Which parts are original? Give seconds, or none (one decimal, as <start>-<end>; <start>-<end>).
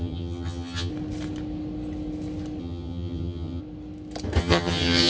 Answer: 0.9-2.6; 3.6-4.4